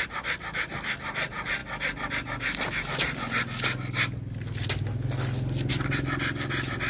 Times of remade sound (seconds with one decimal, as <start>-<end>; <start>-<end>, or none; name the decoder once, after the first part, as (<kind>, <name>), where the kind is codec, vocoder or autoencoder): none